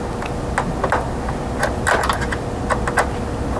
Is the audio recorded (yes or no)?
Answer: yes